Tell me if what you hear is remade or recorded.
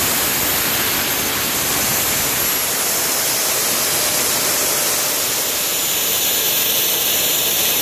recorded